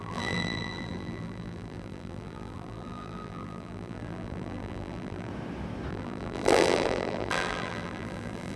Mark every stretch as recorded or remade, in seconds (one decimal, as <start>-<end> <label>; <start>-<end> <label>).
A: 0.0-5.3 remade; 5.3-5.9 recorded; 5.9-8.6 remade